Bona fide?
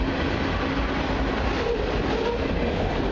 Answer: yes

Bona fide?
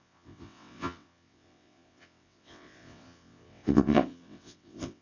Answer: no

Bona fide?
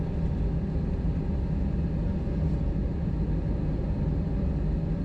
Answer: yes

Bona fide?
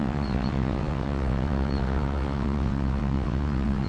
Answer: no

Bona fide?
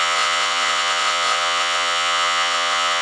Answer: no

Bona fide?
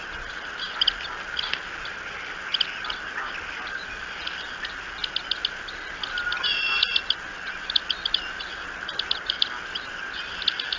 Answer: yes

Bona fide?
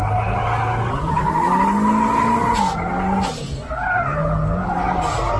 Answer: yes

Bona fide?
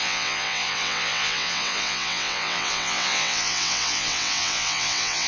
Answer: no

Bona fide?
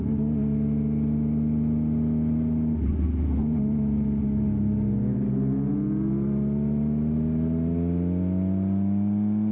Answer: yes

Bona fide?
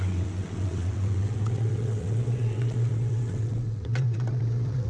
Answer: no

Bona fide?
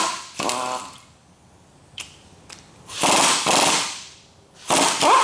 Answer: yes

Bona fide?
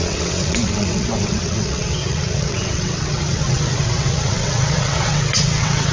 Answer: no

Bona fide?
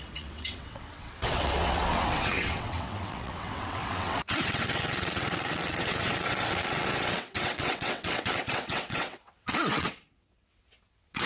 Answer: no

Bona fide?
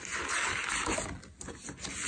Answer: yes